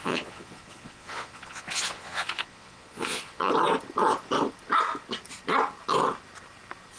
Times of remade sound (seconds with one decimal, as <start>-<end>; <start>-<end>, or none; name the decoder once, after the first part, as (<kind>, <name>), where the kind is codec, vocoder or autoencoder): 0.0-3.5 (vocoder, Vocos)